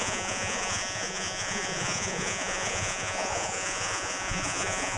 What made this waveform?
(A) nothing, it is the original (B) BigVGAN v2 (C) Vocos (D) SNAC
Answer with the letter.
C